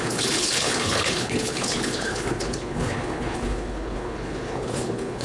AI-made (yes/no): yes